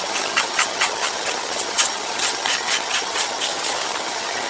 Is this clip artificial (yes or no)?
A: yes